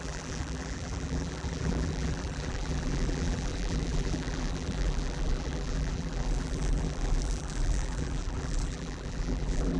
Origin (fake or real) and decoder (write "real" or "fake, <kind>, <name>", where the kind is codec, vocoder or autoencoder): fake, vocoder, BigVGAN v2